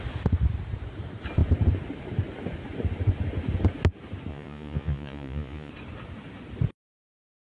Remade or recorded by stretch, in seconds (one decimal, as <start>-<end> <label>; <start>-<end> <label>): 0.0-4.3 recorded; 4.3-5.7 remade; 5.7-7.5 recorded